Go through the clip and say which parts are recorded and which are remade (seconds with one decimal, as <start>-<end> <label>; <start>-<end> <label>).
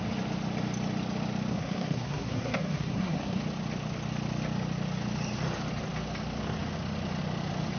0.0-1.5 recorded; 1.5-3.4 remade; 3.4-7.8 recorded